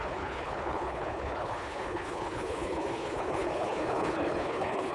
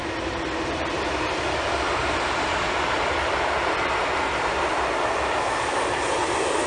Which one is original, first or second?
second